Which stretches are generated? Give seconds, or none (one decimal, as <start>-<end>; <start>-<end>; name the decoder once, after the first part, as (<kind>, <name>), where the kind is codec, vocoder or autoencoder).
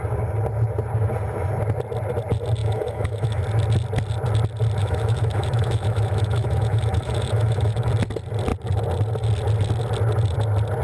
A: 2.6-3.4 (autoencoder, DAC-VAE); 4.8-7.9